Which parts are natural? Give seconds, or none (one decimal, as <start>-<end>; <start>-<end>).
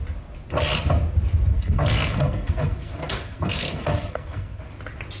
0.0-1.5; 4.6-5.2